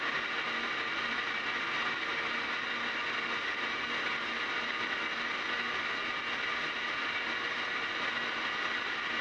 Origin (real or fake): real